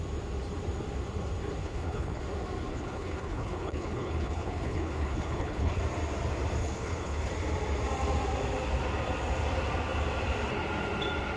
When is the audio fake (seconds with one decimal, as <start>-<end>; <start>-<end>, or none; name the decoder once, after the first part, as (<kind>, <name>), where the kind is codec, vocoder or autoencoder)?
1.6-2.2 (codec, HILCodec); 2.7-5.8; 6.6-7.3